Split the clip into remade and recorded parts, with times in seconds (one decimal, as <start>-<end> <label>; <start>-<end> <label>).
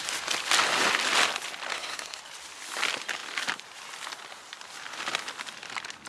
0.0-1.7 recorded; 1.7-2.2 remade; 2.2-6.1 recorded